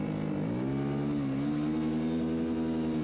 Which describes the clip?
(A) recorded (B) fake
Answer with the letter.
A